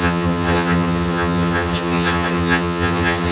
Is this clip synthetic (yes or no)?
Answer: yes